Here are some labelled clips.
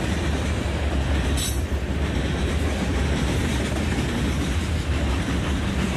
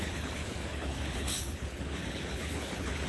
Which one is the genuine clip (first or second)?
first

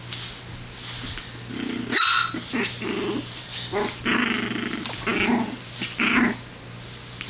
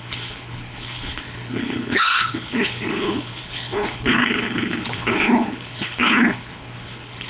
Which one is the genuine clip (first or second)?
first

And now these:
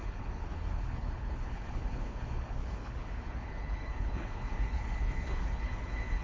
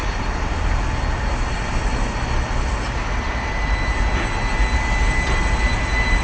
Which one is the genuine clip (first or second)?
second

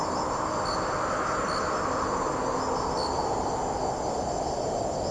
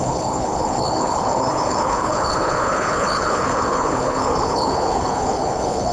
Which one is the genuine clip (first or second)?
first